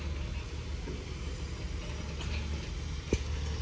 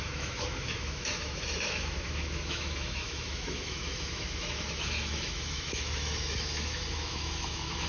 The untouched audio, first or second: first